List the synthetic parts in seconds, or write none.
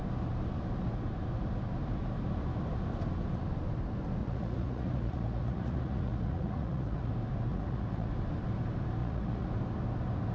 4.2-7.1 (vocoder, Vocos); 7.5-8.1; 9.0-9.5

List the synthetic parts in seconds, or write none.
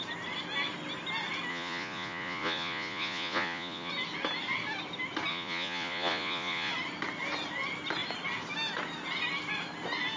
1.5-3.9 (vocoder, Vocos); 5.3-6.7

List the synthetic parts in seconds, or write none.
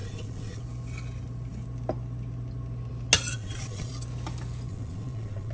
0.0-0.6 (vocoder, Vocos); 3.3-3.9; 4.7-5.5